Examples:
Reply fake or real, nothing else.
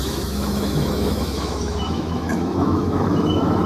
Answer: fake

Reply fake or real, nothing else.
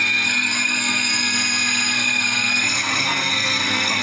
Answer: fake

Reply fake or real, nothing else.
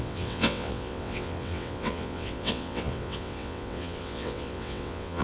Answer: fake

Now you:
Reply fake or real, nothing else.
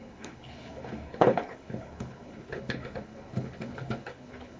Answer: fake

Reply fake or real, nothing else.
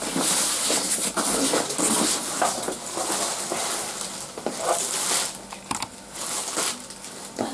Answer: real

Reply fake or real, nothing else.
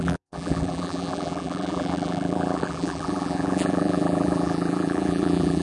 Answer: fake